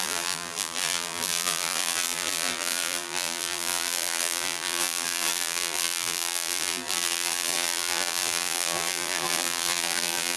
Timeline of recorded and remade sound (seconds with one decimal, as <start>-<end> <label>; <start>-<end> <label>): 0.0-10.4 remade